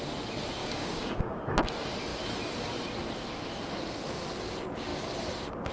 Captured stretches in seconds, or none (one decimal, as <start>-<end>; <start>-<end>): 0.0-0.6; 1.2-5.7